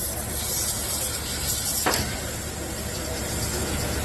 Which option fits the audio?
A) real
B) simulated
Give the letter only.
A